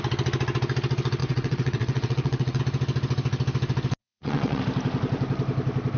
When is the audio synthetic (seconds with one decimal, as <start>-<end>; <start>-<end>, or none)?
1.2-2.6; 4.0-4.6